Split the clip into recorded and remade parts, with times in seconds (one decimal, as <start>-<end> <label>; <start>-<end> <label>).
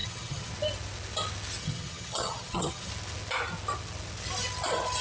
0.0-0.5 remade; 0.5-1.6 recorded; 1.6-2.9 remade; 2.9-5.0 recorded